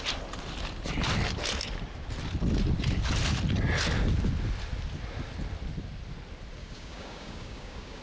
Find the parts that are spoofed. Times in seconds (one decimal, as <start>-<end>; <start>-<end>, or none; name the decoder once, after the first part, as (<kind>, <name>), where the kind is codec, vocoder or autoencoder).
6.6-8.0 (codec, DAC)